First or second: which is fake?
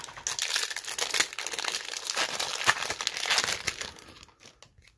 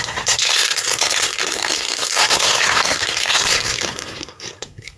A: second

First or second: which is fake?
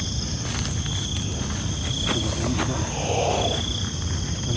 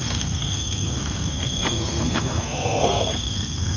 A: second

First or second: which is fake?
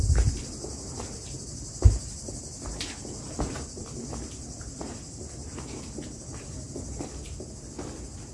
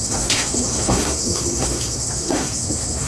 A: second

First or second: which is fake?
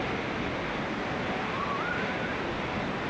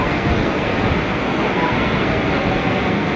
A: second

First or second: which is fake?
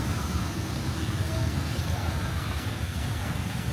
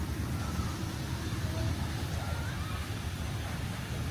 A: first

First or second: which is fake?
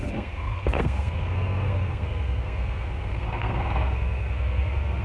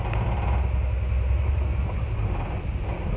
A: first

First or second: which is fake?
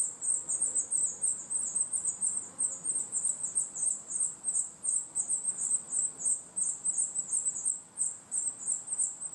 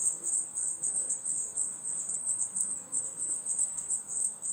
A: second